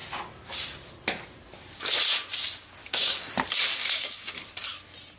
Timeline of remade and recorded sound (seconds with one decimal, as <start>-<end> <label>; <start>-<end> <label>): 0.0-2.8 recorded; 2.8-3.3 remade; 3.3-3.7 recorded; 3.7-4.3 remade; 4.3-5.2 recorded